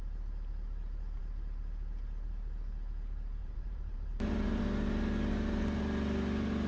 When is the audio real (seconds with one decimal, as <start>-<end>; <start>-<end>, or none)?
0.0-3.4; 4.6-6.7